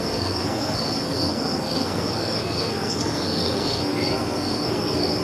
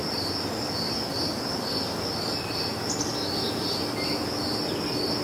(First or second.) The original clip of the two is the second